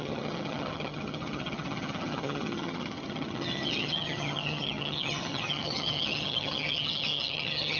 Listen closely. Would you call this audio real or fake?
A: fake